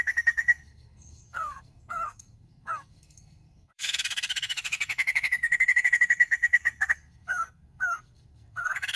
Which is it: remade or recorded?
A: remade